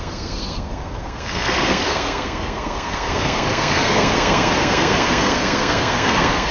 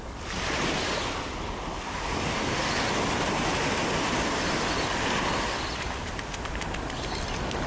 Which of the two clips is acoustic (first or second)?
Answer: second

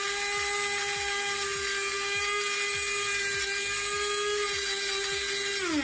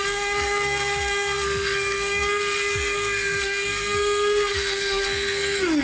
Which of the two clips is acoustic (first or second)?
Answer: first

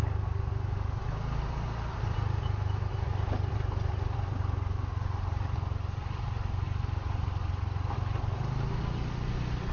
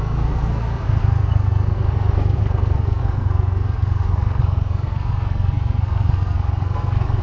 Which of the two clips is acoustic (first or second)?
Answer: first